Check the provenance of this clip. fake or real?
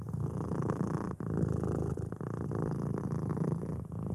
real